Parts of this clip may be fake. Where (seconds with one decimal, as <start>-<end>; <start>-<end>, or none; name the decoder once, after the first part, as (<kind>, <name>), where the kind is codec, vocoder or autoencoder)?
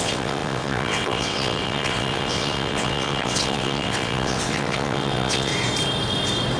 0.0-5.5 (vocoder, WaveNeXt)